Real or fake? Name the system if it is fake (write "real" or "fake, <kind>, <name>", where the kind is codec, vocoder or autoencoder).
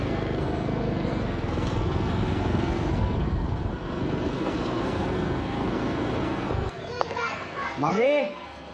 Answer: fake, codec, SNAC